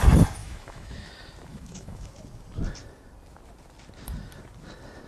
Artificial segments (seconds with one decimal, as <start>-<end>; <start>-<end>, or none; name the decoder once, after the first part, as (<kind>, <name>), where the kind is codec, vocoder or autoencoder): 0.4-1.1 (autoencoder, DAC-VAE); 1.5-2.1